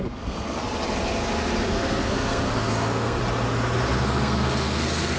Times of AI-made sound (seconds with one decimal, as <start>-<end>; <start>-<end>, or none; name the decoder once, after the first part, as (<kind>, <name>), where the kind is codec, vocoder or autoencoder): 0.0-0.6 (codec, SNAC); 1.7-3.2; 4.0-5.2